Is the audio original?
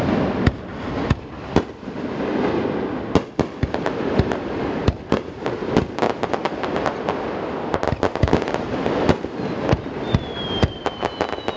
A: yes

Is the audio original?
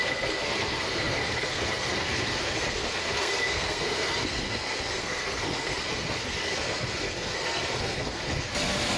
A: no